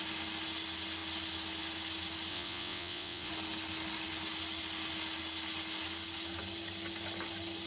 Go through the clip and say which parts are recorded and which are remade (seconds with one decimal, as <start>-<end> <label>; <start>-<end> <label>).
0.0-2.3 recorded; 2.3-3.3 remade; 3.3-7.7 recorded